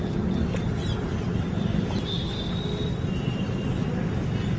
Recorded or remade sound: recorded